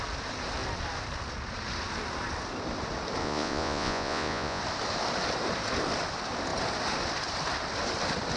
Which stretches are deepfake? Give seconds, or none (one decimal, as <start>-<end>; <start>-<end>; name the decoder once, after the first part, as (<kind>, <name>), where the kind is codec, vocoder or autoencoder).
3.2-4.6 (vocoder, Vocos)